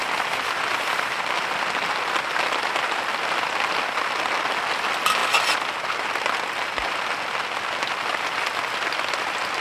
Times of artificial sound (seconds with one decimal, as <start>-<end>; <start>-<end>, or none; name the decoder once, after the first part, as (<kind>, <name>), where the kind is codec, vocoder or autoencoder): none